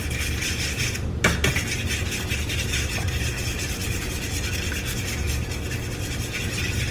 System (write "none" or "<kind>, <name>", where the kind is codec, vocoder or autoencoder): none